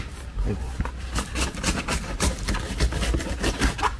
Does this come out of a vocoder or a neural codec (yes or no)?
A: no